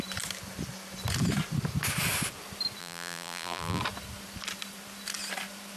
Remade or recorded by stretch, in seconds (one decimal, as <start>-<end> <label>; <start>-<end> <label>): 0.0-2.8 recorded; 2.8-3.8 remade; 3.8-5.8 recorded